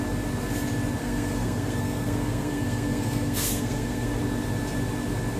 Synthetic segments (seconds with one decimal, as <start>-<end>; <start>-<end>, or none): 1.0-4.2